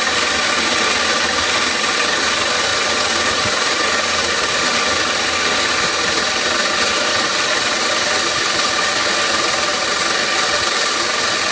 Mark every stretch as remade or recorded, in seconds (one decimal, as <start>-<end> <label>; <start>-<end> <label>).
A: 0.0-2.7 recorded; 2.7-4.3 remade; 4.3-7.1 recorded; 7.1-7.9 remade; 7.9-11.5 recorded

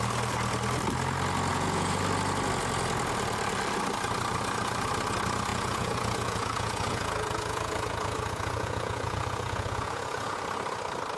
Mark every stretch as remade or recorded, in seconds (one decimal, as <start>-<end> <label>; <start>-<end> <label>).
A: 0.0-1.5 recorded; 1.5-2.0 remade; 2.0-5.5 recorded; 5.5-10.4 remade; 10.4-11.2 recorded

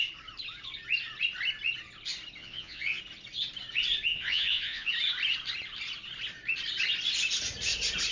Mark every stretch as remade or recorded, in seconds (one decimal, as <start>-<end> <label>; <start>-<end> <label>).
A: 0.0-2.4 recorded; 2.4-3.0 remade; 3.0-4.1 recorded; 4.1-4.9 remade; 4.9-8.1 recorded

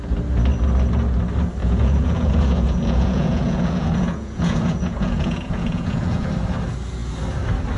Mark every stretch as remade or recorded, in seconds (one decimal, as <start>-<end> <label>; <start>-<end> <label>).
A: 0.0-1.6 recorded; 1.6-6.3 remade; 6.3-7.8 recorded